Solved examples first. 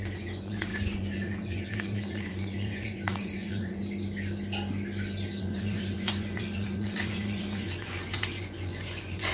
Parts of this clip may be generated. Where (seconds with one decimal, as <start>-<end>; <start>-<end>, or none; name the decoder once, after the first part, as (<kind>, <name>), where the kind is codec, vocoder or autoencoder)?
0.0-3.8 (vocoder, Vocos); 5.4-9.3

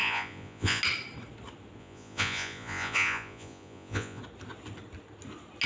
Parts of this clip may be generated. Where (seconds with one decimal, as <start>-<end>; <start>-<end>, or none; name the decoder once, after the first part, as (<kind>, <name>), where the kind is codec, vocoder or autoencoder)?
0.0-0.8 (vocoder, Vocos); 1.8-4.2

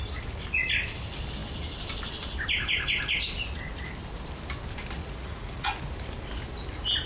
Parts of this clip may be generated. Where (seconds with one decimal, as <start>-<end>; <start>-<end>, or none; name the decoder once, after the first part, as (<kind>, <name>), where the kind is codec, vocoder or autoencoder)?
5.0-5.7 (vocoder, Vocos)

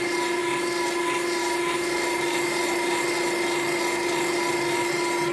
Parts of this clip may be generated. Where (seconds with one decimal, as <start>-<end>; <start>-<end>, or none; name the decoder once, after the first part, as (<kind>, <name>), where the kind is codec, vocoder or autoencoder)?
none

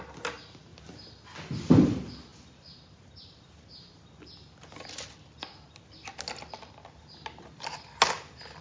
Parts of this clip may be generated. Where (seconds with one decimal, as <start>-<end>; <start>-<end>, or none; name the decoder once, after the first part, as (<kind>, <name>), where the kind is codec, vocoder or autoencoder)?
none